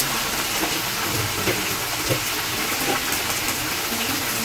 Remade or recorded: recorded